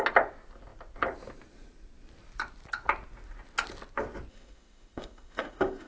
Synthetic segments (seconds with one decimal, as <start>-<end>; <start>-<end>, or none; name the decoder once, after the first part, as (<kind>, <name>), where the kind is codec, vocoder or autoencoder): 4.3-5.9 (autoencoder, DAC-VAE)